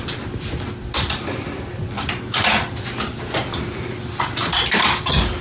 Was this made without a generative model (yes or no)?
yes